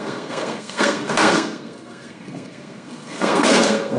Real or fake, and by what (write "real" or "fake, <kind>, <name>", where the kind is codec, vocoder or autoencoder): fake, codec, SNAC